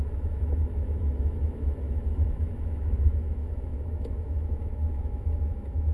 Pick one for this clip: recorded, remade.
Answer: remade